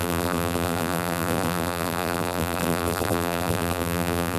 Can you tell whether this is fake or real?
fake